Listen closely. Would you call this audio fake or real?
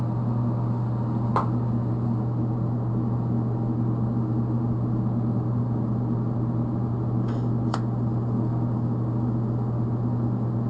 real